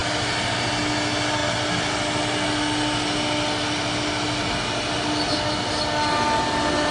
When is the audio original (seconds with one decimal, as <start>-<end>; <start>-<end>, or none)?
0.0-6.9